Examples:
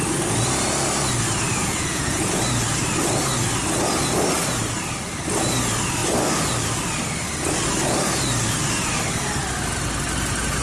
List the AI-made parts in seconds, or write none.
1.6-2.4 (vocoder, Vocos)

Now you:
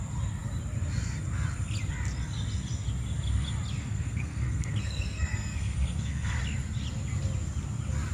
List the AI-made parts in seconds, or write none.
3.8-6.4 (codec, SNAC)

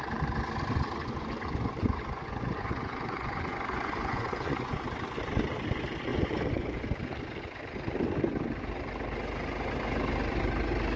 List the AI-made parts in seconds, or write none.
1.0-4.8 (vocoder, Vocos); 6.1-6.8